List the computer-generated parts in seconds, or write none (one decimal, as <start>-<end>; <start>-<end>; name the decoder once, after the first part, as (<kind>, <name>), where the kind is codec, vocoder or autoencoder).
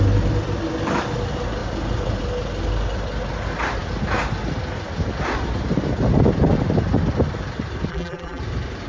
7.9-8.4 (vocoder, BigVGAN v2)